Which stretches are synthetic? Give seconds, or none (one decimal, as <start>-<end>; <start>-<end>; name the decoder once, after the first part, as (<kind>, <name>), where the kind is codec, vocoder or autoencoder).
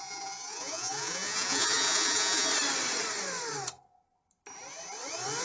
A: 0.0-2.5 (vocoder, Vocos)